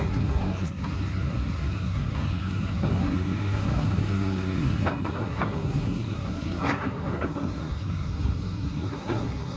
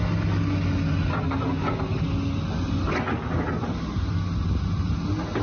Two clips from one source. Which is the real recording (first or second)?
second